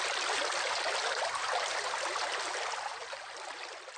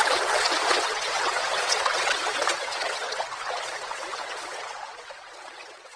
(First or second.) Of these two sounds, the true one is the first